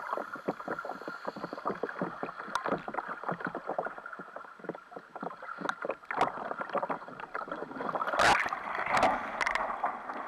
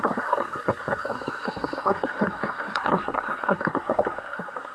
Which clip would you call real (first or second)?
first